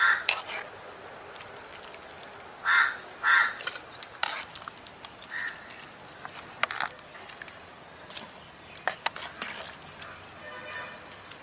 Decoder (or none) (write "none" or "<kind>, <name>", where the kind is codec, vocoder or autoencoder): none